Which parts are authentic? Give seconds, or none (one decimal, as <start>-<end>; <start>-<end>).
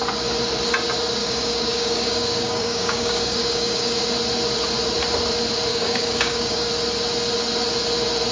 0.0-1.2; 4.0-5.7; 6.7-8.3